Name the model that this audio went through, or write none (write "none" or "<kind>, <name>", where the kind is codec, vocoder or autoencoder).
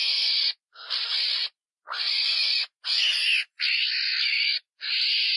none